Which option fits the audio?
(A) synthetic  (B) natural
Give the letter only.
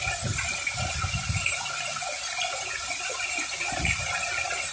B